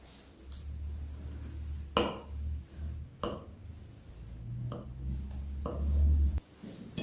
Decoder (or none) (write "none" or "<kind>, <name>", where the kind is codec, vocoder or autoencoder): none